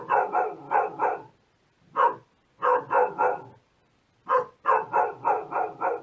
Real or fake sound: real